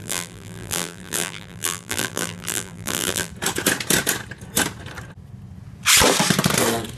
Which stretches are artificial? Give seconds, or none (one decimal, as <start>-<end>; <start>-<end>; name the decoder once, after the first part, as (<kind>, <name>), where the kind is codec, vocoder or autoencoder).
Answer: 0.0-3.3 (vocoder, BigVGAN v2)

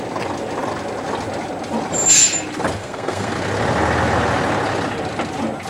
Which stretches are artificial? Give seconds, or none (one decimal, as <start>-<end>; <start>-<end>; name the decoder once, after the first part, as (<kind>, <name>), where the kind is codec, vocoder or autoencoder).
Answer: 2.8-3.3 (codec, SNAC)

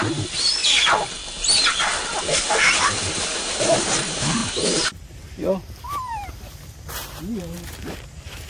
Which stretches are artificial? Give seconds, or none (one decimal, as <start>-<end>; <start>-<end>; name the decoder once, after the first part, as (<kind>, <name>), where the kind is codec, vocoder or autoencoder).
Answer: 0.0-1.2 (vocoder, BigVGAN v2); 2.5-8.5

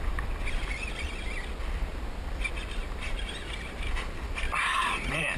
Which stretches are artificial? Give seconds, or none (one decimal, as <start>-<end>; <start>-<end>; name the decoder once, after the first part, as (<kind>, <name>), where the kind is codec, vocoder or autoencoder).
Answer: 2.8-3.9 (vocoder, BigVGAN v2)